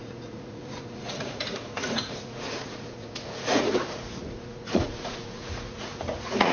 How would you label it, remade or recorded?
remade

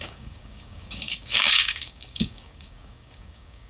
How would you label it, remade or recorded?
remade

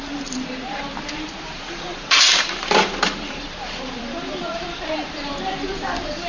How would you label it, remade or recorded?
remade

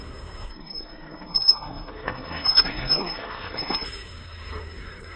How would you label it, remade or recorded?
remade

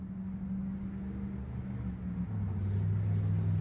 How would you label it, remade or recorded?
recorded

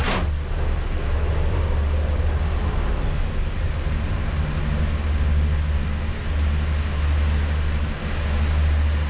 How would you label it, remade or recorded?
recorded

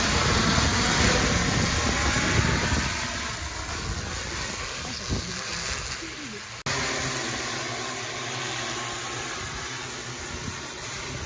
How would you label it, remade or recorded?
recorded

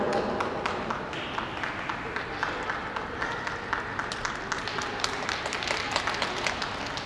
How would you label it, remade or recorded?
recorded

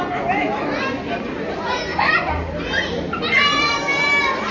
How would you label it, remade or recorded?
recorded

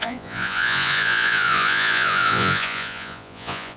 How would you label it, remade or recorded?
remade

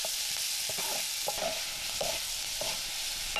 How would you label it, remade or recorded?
recorded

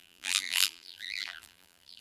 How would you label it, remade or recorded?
remade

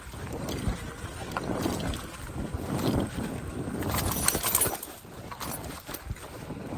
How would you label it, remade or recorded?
recorded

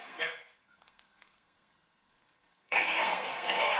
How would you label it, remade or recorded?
remade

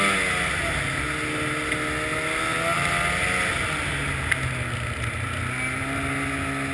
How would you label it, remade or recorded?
recorded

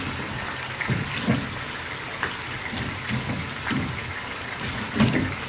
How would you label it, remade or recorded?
recorded